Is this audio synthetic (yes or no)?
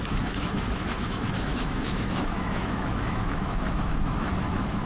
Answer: yes